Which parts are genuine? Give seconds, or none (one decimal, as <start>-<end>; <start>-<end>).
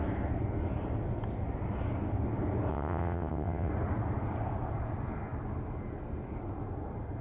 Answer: 0.0-2.7; 3.7-7.2